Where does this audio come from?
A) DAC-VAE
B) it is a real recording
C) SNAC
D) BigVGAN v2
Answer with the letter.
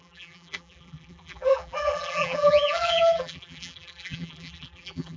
D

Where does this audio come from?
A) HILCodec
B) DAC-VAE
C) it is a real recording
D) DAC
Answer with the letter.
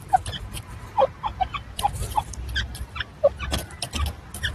C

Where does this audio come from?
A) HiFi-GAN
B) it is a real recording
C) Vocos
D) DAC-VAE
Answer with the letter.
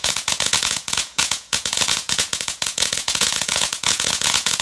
C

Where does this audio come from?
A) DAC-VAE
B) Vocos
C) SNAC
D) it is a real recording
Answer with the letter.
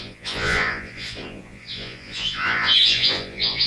B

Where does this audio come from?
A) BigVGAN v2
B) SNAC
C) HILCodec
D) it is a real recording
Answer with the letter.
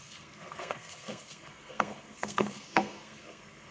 B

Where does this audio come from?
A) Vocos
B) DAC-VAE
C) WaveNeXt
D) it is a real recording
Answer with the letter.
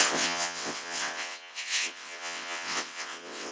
C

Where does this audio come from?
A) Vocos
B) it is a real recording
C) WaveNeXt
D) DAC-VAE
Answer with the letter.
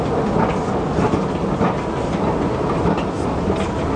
B